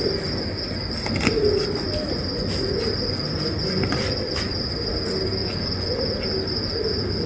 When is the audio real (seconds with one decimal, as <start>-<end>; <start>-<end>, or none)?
0.0-5.4; 6.0-7.3